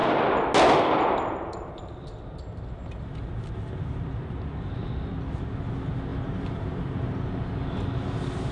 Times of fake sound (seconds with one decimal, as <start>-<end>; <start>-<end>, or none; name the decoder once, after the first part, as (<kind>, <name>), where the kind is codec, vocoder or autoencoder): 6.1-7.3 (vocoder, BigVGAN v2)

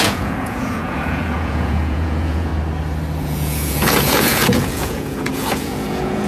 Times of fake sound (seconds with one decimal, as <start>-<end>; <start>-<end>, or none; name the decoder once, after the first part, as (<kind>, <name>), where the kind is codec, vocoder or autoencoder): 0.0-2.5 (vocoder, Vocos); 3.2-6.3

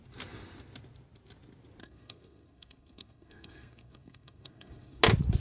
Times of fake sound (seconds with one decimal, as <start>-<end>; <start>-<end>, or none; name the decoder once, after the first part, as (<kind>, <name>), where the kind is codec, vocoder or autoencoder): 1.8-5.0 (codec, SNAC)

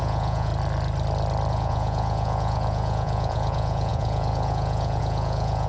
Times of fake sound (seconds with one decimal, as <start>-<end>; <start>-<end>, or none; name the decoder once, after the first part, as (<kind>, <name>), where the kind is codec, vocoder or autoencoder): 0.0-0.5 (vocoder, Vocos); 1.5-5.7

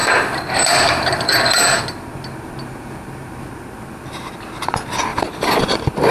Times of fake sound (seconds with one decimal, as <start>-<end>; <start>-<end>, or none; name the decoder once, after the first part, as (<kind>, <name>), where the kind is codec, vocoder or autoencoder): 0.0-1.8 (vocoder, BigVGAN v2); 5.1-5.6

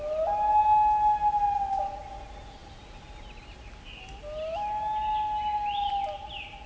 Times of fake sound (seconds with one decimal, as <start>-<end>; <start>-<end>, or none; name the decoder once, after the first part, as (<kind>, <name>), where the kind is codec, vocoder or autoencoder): none

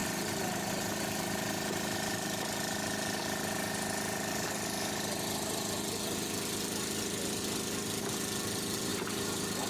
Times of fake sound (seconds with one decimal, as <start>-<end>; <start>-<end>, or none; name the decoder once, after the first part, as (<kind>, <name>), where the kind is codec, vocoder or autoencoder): 0.0-0.7 (vocoder, BigVGAN v2); 8.9-9.7